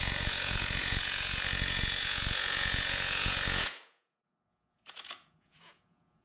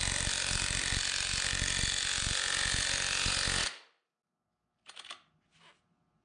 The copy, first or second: first